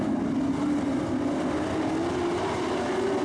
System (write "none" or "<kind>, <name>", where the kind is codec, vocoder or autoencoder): none